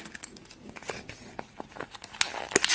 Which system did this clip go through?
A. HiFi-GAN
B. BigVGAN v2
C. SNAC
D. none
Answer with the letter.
D